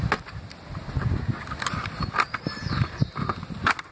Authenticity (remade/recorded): recorded